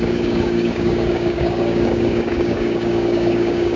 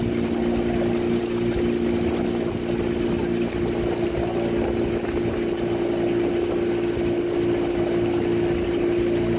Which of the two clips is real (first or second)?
second